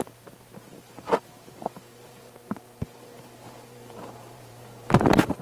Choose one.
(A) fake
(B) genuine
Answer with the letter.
A